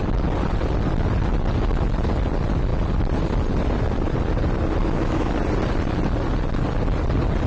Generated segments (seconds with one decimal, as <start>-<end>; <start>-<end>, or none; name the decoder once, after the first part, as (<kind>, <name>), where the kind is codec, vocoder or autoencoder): 4.8-5.4 (autoencoder, DAC-VAE)